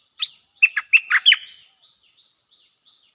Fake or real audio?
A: real